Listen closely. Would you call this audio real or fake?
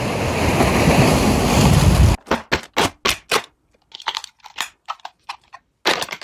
real